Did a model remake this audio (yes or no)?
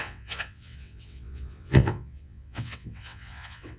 yes